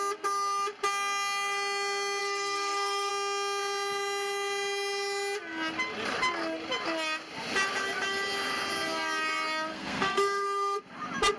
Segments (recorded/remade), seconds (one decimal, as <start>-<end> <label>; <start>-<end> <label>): 0.0-2.2 recorded; 2.2-3.1 remade; 3.1-9.7 recorded; 9.7-10.8 remade; 10.8-11.4 recorded